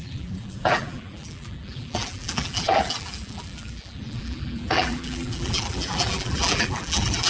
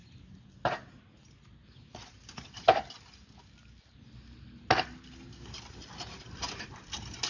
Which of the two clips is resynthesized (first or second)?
first